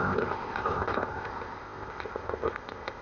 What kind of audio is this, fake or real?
fake